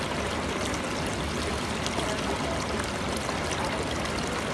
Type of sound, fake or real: real